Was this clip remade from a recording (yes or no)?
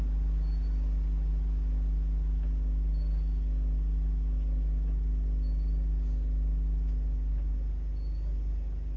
no